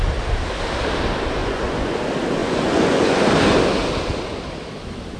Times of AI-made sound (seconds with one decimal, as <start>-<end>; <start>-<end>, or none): 1.4-2.0; 2.4-3.2